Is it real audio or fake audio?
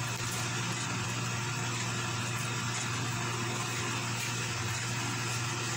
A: real